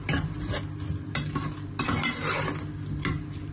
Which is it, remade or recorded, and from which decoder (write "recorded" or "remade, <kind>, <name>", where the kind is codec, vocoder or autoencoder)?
recorded